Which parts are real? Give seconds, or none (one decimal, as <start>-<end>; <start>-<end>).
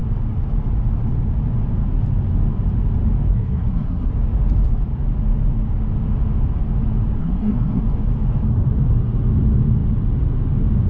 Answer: 0.0-3.3; 4.1-7.2; 7.8-10.9